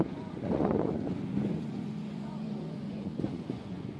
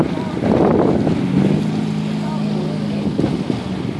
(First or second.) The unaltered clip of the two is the second